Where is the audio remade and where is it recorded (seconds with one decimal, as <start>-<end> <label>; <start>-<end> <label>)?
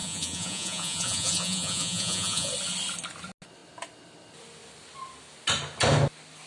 0.0-2.5 remade; 2.5-6.5 recorded